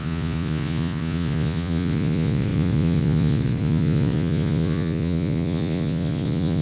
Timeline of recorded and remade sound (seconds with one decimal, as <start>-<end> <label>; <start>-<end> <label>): 0.0-6.6 remade

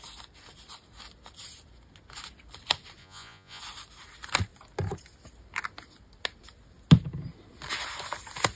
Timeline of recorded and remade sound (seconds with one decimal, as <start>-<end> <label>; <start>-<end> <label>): 0.0-3.0 recorded; 3.0-3.6 remade; 3.6-8.6 recorded